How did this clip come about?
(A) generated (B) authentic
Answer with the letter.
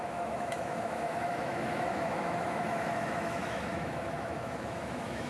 A